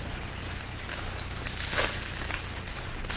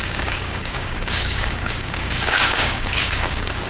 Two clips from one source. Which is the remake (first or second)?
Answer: second